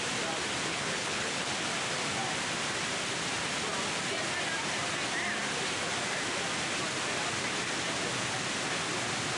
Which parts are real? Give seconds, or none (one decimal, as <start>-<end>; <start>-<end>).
0.0-0.7; 1.5-9.4